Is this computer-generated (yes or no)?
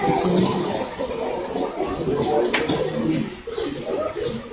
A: no